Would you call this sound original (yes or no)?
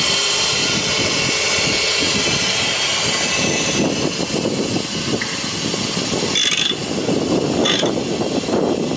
yes